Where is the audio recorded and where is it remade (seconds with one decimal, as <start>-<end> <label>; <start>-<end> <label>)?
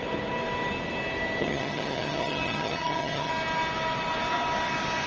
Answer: 0.0-1.4 recorded; 1.4-3.3 remade; 3.3-5.1 recorded